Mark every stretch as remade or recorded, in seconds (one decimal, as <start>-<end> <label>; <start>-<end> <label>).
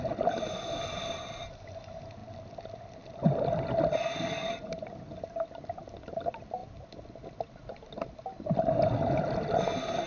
0.0-10.1 recorded